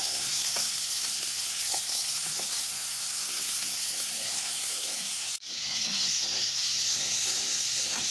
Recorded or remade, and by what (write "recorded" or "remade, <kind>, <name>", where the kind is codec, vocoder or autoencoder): remade, codec, SNAC